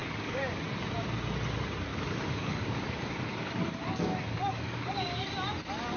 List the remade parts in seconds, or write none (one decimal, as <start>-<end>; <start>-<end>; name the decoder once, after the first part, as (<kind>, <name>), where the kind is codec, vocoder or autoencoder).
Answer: 0.0-0.6 (codec, DAC); 1.9-5.3